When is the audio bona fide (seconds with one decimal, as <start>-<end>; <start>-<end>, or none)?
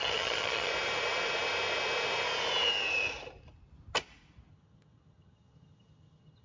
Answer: 0.7-4.5